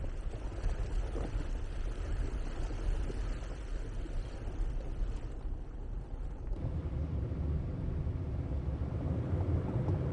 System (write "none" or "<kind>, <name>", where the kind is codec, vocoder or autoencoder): none